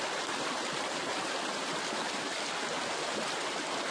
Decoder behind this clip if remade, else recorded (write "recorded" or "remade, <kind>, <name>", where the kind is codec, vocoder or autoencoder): recorded